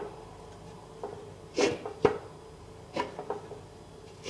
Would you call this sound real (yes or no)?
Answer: yes